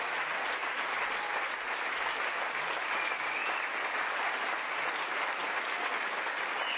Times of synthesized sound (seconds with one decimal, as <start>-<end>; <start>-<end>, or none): 3.4-4.4